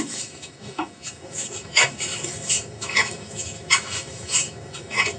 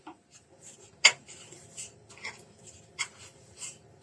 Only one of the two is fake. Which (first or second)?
first